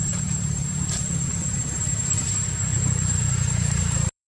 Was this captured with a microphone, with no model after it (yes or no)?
no